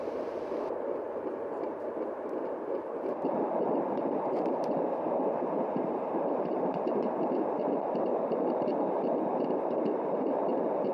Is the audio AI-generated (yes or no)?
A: yes